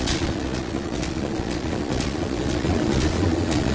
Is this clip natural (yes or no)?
no